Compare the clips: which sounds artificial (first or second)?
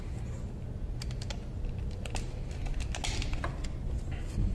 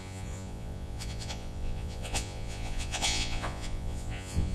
second